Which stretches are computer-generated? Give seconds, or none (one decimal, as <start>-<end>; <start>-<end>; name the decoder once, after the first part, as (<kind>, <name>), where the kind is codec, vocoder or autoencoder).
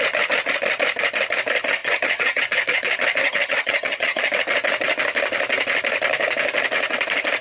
1.8-2.4 (vocoder, HiFi-GAN); 3.2-4.3